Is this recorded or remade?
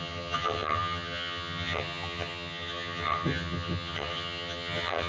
remade